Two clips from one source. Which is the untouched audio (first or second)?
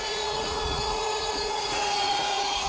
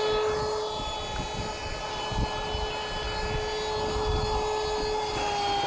second